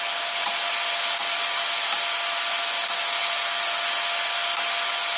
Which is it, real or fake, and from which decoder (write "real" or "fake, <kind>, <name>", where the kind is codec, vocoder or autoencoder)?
real